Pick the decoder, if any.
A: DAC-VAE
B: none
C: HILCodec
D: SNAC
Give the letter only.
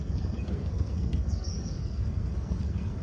D